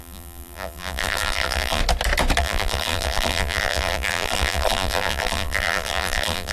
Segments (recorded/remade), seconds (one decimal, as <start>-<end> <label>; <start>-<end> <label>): 0.0-1.8 remade; 1.8-2.4 recorded; 2.4-6.5 remade